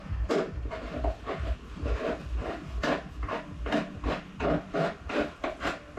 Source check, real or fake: real